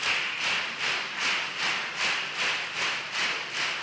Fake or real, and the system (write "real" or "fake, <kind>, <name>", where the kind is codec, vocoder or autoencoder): real